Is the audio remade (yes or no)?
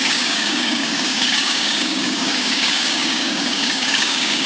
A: yes